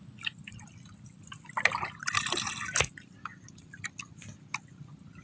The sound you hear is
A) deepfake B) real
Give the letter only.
B